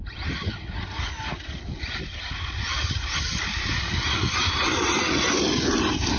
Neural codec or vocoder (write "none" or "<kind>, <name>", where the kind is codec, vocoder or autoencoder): none